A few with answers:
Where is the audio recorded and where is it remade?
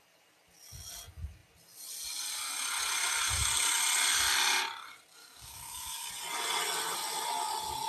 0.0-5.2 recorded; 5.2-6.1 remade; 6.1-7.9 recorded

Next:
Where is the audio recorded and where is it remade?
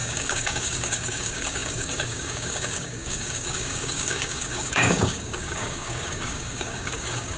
0.0-7.4 remade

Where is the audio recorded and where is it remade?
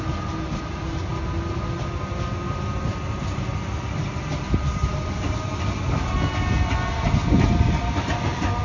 0.0-8.6 recorded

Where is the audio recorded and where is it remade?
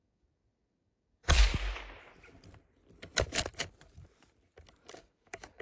0.0-1.5 remade; 1.5-4.9 recorded; 4.9-5.6 remade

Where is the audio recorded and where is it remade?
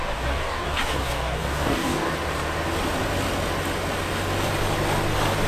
0.0-2.1 remade; 2.1-5.5 recorded